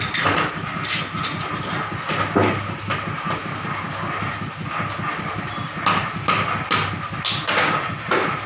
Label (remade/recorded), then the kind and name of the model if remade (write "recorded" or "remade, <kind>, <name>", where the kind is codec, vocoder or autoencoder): recorded